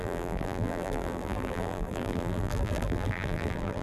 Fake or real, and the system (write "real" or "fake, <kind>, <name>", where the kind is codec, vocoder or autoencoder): fake, vocoder, BigVGAN v2